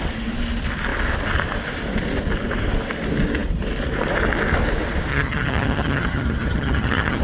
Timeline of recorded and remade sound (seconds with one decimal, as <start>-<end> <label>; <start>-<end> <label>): 0.0-5.1 recorded; 5.1-7.2 remade